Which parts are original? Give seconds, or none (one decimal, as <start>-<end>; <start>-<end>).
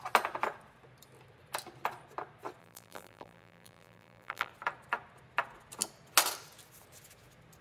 0.0-2.6; 4.5-7.6